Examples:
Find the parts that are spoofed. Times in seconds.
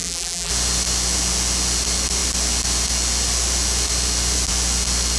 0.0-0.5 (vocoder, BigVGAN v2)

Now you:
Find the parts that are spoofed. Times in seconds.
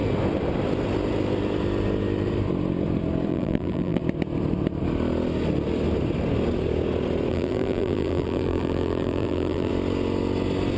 3.3-4.0 (vocoder, BigVGAN v2); 7.3-9.7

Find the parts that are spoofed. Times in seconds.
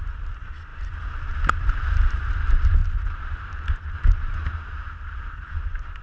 0.0-2.8 (vocoder, BigVGAN v2); 5.5-6.0